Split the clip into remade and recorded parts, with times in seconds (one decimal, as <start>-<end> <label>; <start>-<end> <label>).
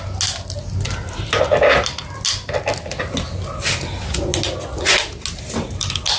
0.0-6.2 recorded